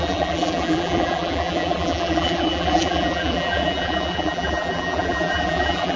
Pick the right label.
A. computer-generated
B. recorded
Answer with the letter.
A